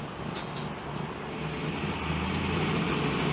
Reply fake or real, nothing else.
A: real